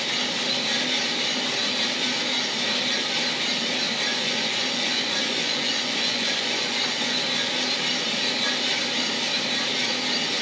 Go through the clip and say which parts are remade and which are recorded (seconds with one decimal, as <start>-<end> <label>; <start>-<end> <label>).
0.0-4.1 recorded; 4.1-7.5 remade; 7.5-10.4 recorded